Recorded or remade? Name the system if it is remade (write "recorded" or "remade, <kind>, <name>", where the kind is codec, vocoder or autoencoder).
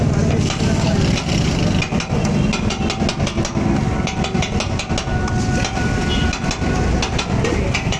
recorded